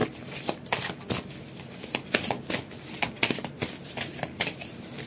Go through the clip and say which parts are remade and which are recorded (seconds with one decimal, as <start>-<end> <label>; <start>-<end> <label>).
0.0-5.1 recorded